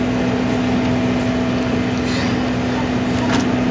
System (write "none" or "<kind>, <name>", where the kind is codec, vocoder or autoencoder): none